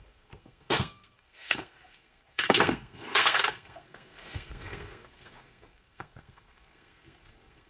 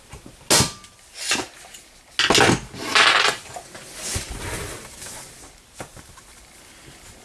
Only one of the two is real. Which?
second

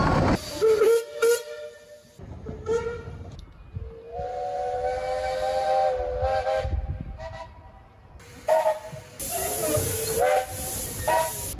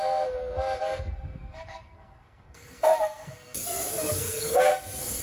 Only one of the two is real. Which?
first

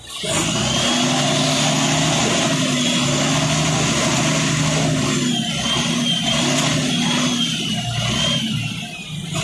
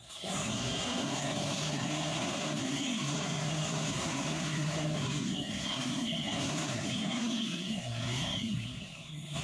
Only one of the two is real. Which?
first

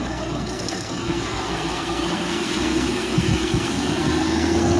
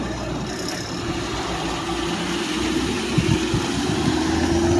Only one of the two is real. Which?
second